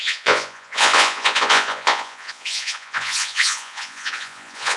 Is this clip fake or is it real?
fake